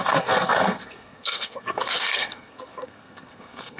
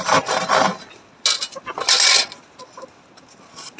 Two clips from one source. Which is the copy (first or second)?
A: first